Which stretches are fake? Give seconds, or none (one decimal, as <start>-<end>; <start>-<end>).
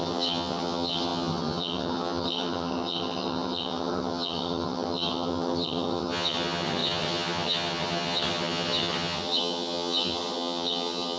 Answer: 0.0-11.2